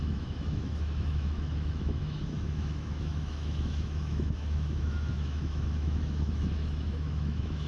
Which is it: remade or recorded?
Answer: remade